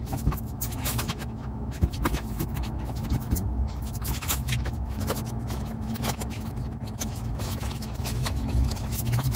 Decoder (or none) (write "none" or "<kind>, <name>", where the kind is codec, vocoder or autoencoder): autoencoder, DAC-VAE